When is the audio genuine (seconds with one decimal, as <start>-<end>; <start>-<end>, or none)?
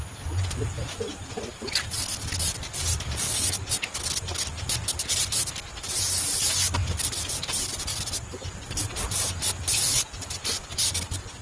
0.0-11.4